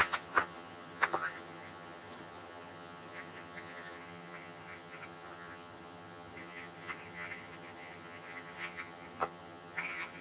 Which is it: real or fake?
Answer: fake